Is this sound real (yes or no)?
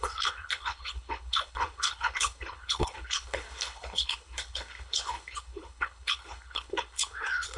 no